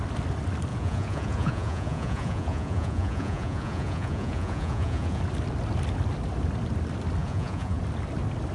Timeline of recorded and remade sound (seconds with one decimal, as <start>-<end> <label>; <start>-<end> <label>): 0.0-0.7 recorded; 0.7-5.2 remade; 5.2-7.2 recorded; 7.2-7.8 remade; 7.8-8.5 recorded